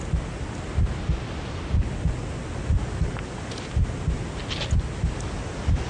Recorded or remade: recorded